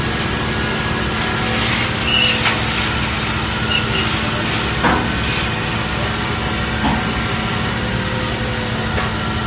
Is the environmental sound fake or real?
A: real